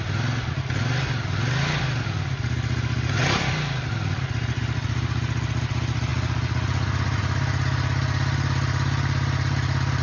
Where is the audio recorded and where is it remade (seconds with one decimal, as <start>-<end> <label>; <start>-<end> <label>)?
0.0-10.0 recorded